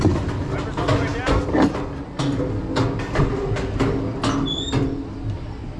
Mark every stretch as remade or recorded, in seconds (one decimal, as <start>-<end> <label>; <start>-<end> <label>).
0.0-5.8 recorded